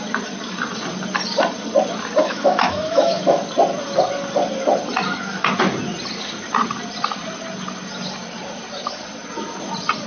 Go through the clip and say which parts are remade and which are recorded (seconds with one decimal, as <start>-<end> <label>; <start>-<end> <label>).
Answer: 0.0-2.2 recorded; 2.2-3.4 remade; 3.4-10.1 recorded